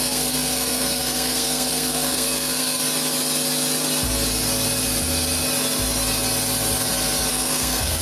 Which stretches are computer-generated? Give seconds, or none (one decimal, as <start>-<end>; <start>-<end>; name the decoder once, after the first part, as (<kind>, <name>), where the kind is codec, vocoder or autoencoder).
0.0-2.8 (codec, SNAC); 7.3-8.0